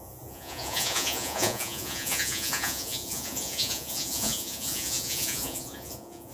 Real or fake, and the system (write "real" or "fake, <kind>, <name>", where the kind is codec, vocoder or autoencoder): fake, vocoder, Vocos